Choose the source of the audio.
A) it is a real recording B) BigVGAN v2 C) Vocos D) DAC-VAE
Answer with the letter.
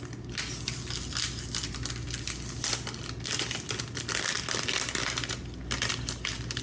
A